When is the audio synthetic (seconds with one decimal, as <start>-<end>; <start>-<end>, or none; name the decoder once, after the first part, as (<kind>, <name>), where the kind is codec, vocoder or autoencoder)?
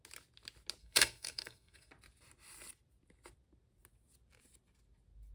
0.8-1.9 (codec, SNAC)